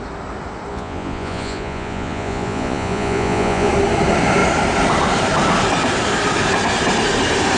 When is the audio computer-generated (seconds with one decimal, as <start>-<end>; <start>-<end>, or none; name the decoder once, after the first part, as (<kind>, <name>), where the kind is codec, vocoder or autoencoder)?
0.7-3.7 (vocoder, Vocos)